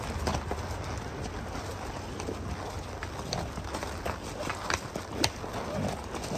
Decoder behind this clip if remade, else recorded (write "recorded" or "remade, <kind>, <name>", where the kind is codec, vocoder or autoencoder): recorded